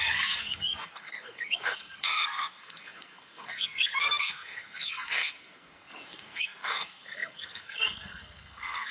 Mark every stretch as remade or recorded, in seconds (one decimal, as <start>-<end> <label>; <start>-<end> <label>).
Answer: 0.0-8.9 remade